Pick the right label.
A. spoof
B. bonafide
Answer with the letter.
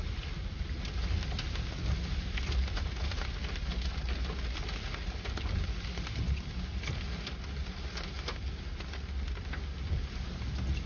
B